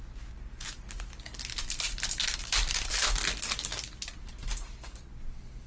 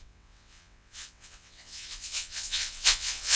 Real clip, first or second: first